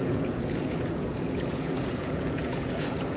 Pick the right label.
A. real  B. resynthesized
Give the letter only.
B